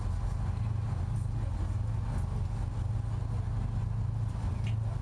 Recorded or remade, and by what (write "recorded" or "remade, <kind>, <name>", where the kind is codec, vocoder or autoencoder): recorded